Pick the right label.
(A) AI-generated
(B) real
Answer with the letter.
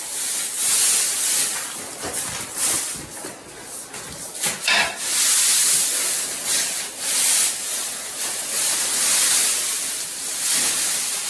B